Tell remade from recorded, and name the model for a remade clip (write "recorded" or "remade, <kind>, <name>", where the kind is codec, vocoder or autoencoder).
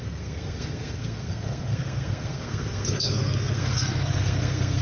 remade, codec, SNAC